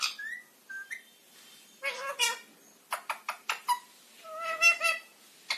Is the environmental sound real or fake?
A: real